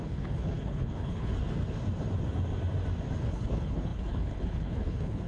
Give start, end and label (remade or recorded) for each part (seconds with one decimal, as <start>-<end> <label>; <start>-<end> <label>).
0.0-1.3 remade; 1.3-3.2 recorded; 3.2-5.3 remade